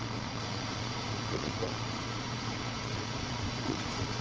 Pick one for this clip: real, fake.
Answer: fake